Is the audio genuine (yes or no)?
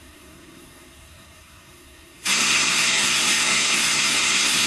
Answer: no